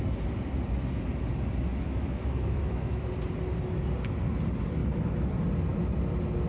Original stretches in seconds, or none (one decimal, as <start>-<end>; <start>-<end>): 0.0-1.7; 3.1-4.8; 5.3-6.5